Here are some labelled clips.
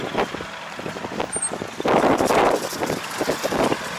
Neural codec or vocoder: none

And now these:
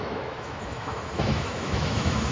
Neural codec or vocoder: autoencoder, DAC-VAE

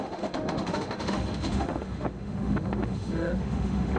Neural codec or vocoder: autoencoder, DAC-VAE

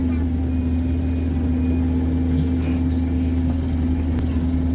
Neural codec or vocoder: none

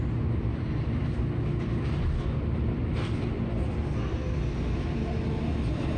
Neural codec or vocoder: none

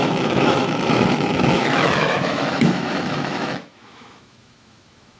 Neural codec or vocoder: autoencoder, DAC-VAE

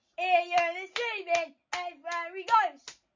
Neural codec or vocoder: none